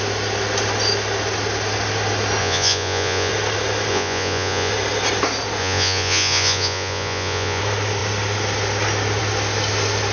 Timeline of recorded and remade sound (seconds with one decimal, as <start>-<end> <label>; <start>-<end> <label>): 0.0-2.4 recorded; 2.4-3.3 remade; 3.3-3.9 recorded; 3.9-4.7 remade; 4.7-5.6 recorded; 5.6-7.6 remade; 7.6-10.1 recorded